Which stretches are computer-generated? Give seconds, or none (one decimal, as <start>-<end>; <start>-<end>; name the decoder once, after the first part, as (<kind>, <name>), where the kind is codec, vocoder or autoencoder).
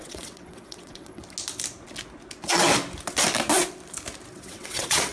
0.0-1.2 (vocoder, WaveNeXt); 4.3-5.1